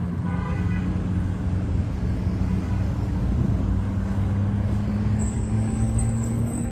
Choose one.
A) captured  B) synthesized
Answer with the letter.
B